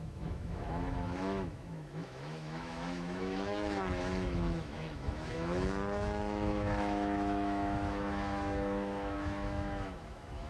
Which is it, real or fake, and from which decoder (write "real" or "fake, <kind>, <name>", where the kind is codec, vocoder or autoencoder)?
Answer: fake, autoencoder, DAC-VAE